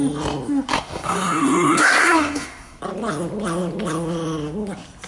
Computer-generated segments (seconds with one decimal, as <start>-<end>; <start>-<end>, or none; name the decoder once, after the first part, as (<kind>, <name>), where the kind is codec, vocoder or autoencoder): 0.7-2.8 (codec, SNAC)